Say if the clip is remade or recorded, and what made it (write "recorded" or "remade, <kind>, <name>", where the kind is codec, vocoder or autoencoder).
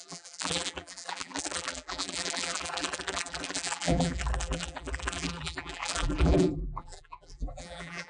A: remade, vocoder, BigVGAN v2